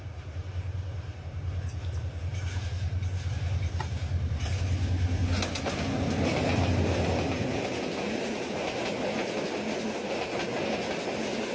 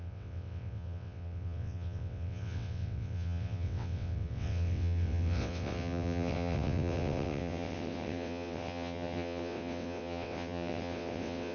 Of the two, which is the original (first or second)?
first